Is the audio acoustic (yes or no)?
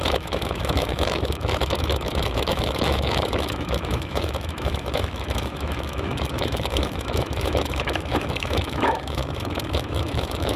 no